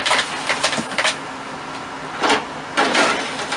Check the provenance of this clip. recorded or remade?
recorded